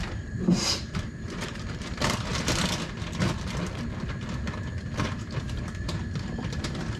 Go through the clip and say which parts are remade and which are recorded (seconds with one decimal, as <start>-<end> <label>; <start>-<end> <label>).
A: 0.0-2.3 remade; 2.3-5.4 recorded; 5.4-7.0 remade